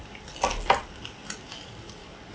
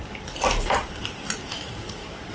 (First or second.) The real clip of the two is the first